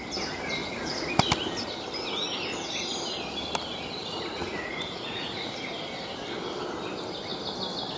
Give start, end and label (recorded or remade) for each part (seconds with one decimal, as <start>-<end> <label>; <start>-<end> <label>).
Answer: 0.0-0.6 recorded; 0.6-1.1 remade; 1.1-4.0 recorded; 4.0-5.5 remade; 5.5-8.0 recorded